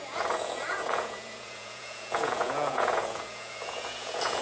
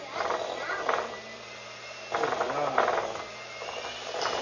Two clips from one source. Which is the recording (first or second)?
second